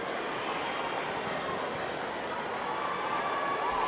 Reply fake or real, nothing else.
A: real